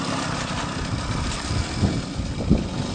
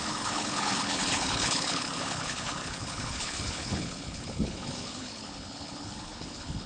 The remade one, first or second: second